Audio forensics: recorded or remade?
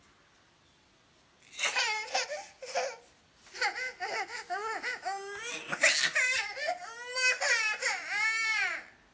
recorded